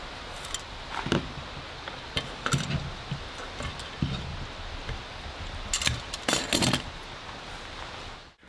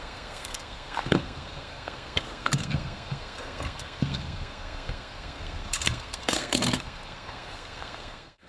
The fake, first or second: second